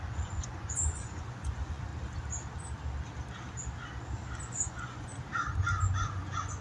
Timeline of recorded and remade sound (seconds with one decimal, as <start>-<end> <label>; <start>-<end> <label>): 0.0-1.9 remade; 1.9-4.4 recorded; 4.4-5.1 remade; 5.1-5.8 recorded; 5.8-6.6 remade